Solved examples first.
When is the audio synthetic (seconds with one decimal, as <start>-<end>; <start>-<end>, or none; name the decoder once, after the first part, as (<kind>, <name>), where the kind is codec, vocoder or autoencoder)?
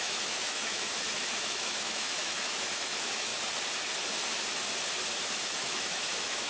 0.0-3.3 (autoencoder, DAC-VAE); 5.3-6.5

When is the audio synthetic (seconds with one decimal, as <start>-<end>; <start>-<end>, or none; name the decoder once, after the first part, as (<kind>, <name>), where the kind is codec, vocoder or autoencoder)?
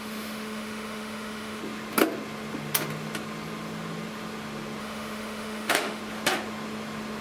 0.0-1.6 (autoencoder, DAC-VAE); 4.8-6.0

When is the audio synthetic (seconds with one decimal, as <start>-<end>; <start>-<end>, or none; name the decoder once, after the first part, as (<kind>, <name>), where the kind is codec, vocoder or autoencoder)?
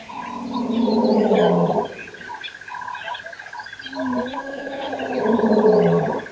4.3-4.9 (autoencoder, DAC-VAE)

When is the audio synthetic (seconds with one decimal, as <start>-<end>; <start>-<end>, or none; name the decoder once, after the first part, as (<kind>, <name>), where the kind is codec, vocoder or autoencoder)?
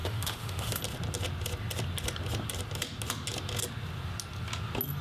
0.0-0.8 (autoencoder, DAC-VAE)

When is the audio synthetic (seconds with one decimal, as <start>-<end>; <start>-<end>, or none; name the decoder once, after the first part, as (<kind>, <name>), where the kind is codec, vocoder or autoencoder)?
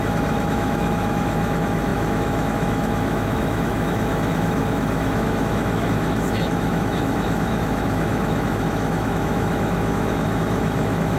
0.0-11.2 (autoencoder, DAC-VAE)